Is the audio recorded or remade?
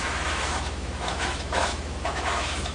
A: remade